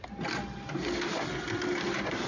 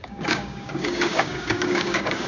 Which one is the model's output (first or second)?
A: second